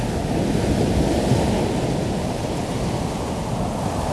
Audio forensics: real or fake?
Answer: real